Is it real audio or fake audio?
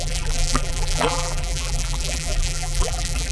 fake